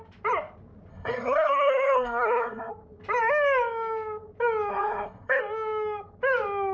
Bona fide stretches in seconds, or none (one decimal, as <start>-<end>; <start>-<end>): 0.0-0.9; 2.7-4.7; 5.4-6.7